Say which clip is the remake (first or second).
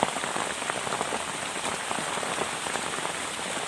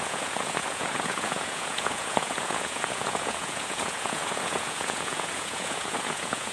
second